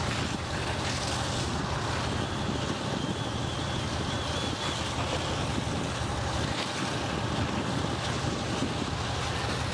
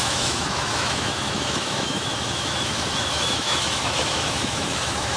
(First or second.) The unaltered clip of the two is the first